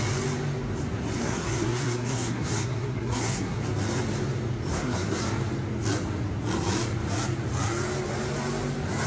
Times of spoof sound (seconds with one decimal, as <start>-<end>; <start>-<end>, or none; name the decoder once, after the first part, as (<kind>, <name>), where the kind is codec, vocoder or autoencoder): 1.2-3.6 (codec, SNAC); 4.7-5.2